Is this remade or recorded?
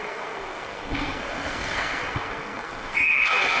remade